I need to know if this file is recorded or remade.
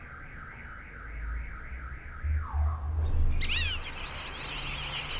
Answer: recorded